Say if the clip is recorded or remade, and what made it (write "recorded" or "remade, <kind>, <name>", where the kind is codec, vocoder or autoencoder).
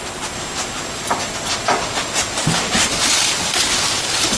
recorded